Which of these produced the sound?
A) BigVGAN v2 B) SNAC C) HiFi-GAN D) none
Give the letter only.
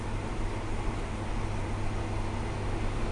D